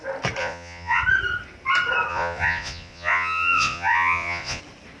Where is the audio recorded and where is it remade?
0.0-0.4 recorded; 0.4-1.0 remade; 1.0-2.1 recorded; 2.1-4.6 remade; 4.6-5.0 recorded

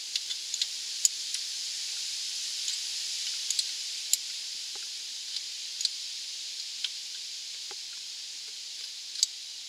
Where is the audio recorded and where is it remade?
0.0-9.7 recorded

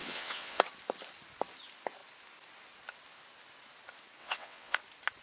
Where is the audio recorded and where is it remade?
0.0-0.6 remade; 0.6-4.2 recorded; 4.2-4.8 remade; 4.8-5.2 recorded

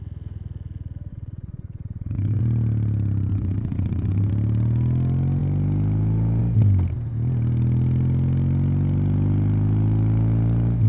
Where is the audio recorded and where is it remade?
0.0-1.1 recorded; 1.1-2.4 remade; 2.4-3.3 recorded; 3.3-4.3 remade; 4.3-10.9 recorded

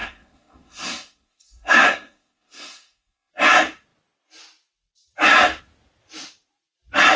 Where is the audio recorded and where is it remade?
0.0-3.3 remade; 3.3-7.2 recorded